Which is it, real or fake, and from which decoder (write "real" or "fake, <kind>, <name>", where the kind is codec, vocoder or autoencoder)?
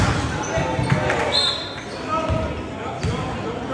real